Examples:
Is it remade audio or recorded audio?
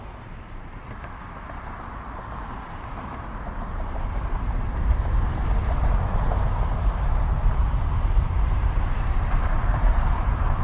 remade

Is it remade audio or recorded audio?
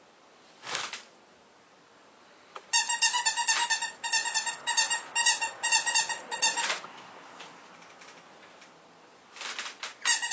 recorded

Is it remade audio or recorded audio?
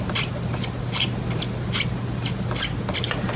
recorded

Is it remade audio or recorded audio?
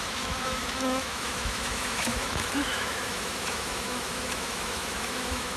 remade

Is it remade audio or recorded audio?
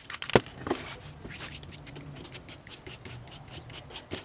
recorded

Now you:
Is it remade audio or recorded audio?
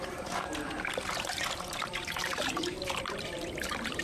remade